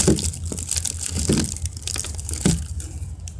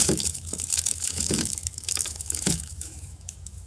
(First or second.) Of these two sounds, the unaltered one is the first